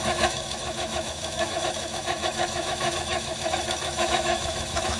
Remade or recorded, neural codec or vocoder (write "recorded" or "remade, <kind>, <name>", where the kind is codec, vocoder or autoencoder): remade, autoencoder, DAC-VAE